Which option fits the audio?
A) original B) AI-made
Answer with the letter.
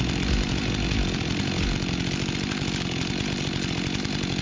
B